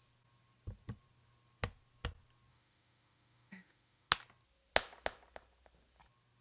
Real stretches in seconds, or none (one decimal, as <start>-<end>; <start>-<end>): 0.0-2.5; 4.1-6.4